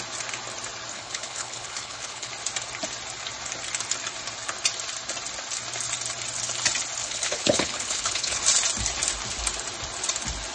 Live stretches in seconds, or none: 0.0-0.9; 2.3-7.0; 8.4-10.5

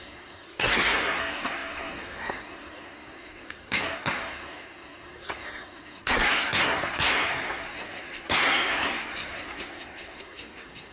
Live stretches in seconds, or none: none